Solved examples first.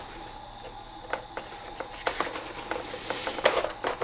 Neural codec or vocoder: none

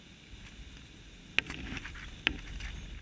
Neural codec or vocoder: none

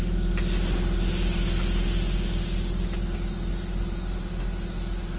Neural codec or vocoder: none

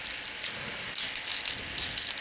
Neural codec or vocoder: none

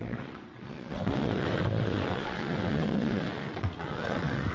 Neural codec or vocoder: vocoder, WaveNeXt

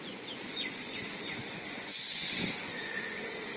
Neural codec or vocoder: vocoder, Vocos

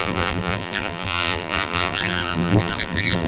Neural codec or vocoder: vocoder, BigVGAN v2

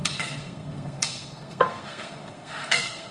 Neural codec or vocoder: codec, SNAC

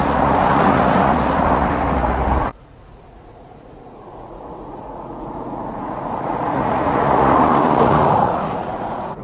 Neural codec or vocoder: vocoder, Vocos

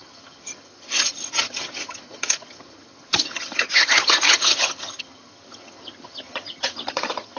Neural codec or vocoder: vocoder, HiFi-GAN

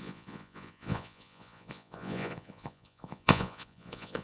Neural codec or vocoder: vocoder, Vocos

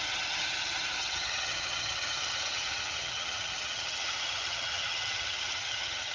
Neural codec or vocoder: vocoder, HiFi-GAN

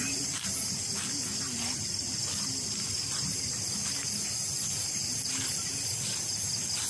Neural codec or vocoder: none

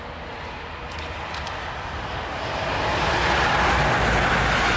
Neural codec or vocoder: none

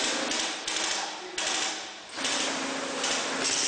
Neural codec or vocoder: none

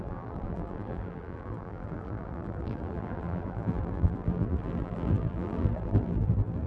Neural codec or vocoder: vocoder, BigVGAN v2